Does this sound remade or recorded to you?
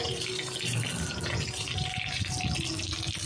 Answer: recorded